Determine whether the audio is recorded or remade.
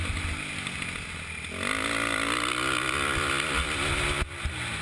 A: recorded